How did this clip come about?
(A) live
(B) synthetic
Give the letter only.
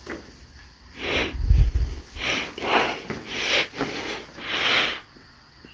A